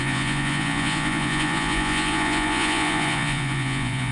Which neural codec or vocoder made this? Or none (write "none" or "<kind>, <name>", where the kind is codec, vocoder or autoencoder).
vocoder, Vocos